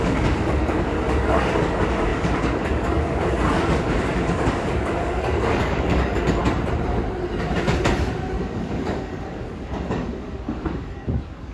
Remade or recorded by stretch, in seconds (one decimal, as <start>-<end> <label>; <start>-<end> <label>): 0.0-6.4 remade; 6.4-8.4 recorded; 8.4-11.5 remade